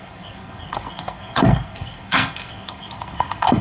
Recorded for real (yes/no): no